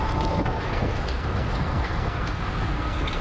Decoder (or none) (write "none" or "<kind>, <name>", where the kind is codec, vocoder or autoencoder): codec, SNAC